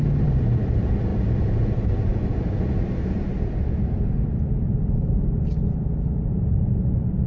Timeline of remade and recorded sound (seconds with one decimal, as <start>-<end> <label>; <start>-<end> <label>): 0.0-2.1 remade; 2.1-6.3 recorded; 6.3-7.3 remade